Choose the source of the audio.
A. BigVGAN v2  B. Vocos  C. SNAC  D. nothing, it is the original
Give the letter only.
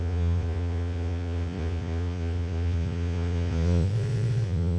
B